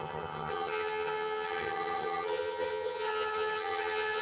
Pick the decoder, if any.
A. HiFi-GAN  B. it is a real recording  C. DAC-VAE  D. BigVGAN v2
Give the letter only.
A